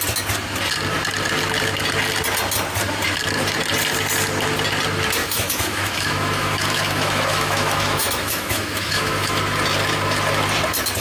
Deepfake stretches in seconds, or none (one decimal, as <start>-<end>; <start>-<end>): 5.2-9.4